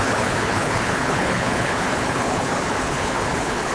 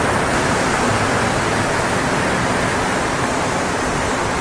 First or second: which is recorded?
second